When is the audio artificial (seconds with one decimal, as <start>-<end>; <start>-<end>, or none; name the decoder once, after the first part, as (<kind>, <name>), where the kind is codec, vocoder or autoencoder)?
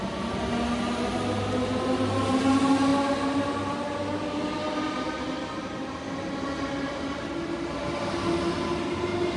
none